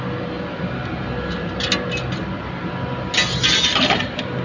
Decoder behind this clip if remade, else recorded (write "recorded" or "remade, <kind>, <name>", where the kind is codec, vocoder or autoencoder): recorded